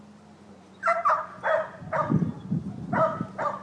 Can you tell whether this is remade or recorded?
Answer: recorded